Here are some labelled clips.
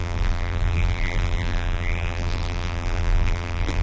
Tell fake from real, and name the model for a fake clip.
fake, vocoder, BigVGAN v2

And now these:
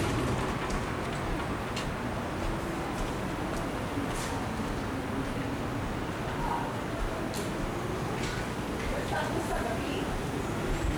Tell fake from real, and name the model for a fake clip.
real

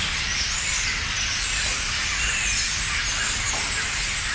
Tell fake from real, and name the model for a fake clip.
real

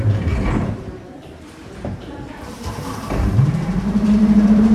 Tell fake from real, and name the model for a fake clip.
fake, vocoder, BigVGAN v2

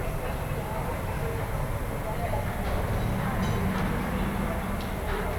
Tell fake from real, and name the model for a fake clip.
real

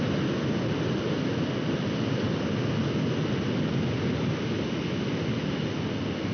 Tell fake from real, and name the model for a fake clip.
real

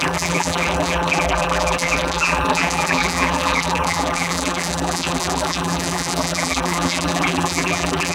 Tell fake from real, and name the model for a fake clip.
fake, vocoder, BigVGAN v2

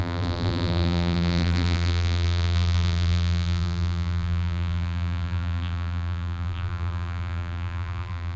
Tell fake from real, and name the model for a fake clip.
fake, vocoder, BigVGAN v2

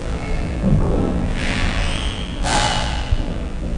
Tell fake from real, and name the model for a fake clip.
fake, vocoder, BigVGAN v2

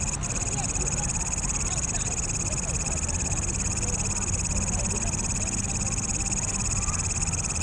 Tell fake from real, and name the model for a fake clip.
real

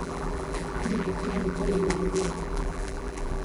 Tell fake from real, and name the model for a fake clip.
fake, vocoder, BigVGAN v2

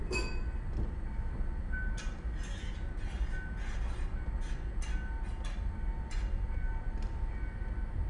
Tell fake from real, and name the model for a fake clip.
real